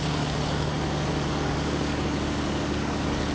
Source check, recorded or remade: remade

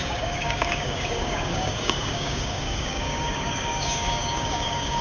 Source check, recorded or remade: remade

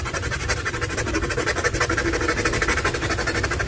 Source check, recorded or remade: recorded